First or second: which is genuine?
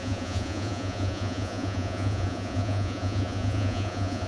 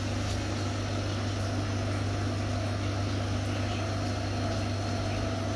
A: second